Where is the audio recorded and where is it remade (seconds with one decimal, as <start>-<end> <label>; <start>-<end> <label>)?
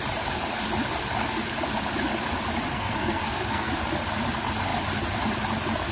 0.0-2.7 recorded; 2.7-3.7 remade; 3.7-5.9 recorded